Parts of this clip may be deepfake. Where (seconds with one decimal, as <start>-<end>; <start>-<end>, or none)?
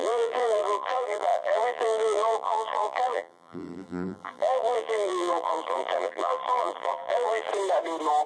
0.0-7.5